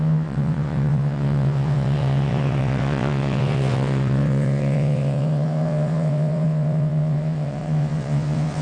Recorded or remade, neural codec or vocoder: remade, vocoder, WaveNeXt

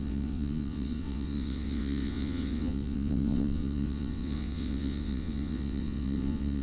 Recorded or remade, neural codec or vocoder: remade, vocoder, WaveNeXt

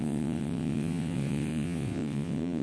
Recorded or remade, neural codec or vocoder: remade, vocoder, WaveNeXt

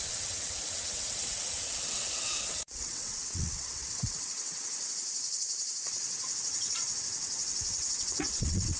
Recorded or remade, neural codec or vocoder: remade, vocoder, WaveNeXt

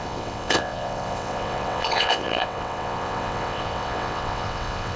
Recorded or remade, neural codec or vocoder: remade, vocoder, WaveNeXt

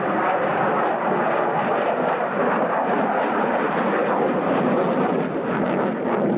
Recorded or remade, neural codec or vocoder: recorded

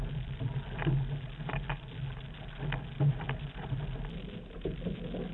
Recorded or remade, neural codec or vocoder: recorded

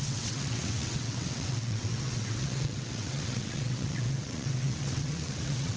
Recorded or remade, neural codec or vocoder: remade, vocoder, WaveNeXt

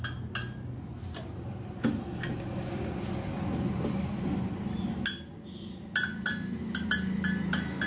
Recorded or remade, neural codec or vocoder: recorded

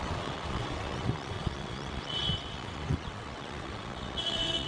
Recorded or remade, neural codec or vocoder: remade, vocoder, WaveNeXt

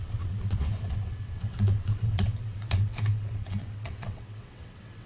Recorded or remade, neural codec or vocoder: remade, vocoder, WaveNeXt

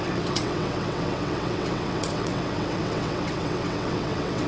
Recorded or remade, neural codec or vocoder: remade, vocoder, WaveNeXt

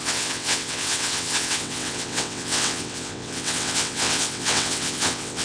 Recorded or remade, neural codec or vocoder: remade, vocoder, WaveNeXt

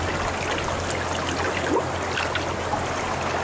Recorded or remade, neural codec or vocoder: recorded